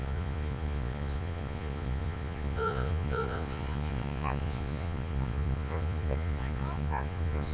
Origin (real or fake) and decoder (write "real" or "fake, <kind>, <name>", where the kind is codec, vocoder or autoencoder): fake, vocoder, Vocos